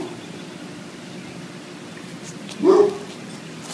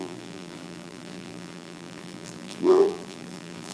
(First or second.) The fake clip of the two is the second